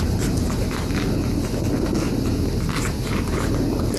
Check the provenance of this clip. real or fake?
real